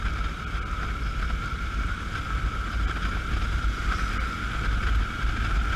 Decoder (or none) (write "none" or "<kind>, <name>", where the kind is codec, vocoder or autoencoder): none